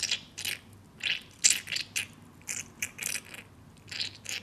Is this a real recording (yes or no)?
yes